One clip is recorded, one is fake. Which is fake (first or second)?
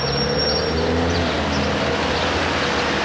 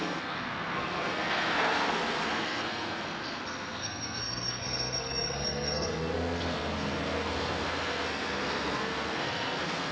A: second